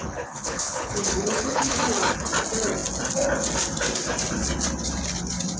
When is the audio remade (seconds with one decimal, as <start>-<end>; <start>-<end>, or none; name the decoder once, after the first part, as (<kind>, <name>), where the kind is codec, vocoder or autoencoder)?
0.0-1.8 (codec, HILCodec)